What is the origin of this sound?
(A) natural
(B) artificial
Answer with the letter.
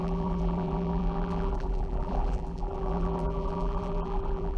B